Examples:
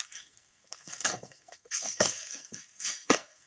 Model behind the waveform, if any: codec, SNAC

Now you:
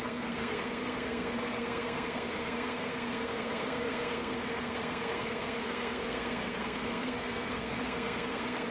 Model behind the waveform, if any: codec, SNAC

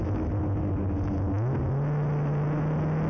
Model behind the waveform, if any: none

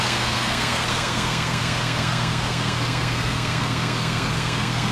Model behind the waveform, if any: codec, SNAC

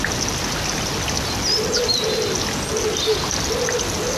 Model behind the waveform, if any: none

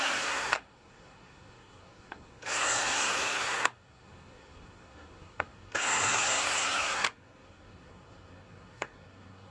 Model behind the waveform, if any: codec, SNAC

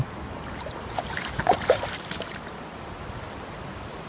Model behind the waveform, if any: none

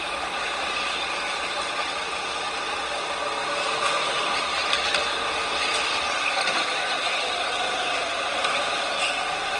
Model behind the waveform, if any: none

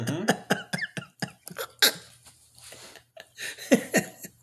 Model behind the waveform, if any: none